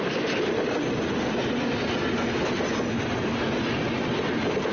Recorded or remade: recorded